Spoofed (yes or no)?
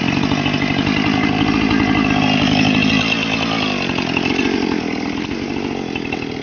no